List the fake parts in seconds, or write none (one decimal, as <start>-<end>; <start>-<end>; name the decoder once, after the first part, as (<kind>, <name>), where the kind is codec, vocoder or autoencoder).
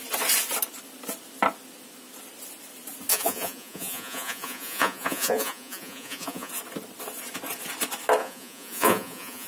3.1-6.5 (vocoder, Vocos); 8.2-9.5